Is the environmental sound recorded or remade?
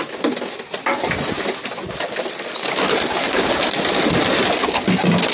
recorded